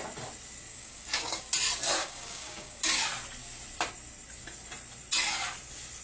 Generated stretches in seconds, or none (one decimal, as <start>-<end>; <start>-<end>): 0.7-1.5; 2.0-2.8